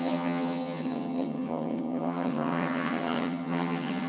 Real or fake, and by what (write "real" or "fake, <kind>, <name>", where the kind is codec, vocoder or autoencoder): fake, vocoder, HiFi-GAN